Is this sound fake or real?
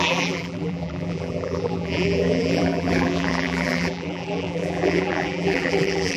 fake